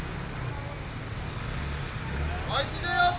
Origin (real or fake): real